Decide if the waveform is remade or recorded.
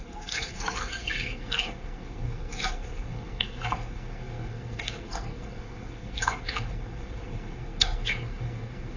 remade